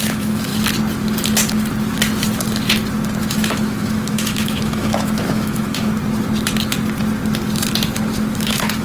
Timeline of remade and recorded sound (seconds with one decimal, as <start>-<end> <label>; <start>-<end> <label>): 0.0-0.5 remade; 0.5-3.2 recorded; 3.2-5.9 remade; 5.9-8.4 recorded; 8.4-8.8 remade